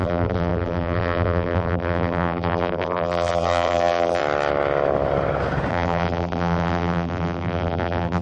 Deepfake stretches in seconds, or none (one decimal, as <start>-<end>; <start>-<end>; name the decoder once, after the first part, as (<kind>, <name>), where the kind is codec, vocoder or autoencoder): 0.0-4.2 (vocoder, BigVGAN v2); 5.7-8.2